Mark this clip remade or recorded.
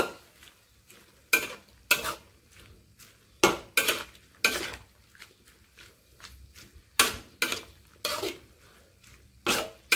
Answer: recorded